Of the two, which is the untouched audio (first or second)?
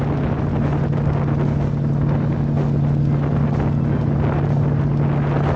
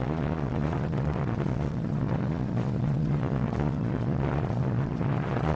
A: first